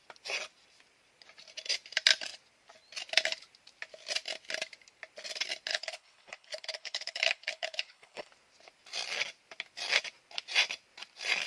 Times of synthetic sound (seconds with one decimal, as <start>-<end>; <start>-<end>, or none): 5.7-8.3